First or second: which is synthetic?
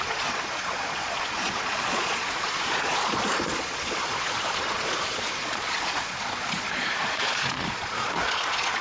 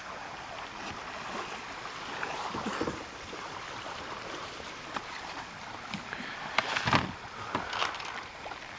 first